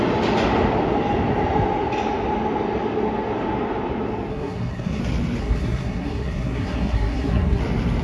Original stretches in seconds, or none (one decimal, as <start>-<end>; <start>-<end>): 0.0-4.3; 5.0-5.4; 7.6-8.0